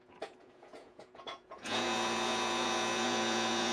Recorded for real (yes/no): no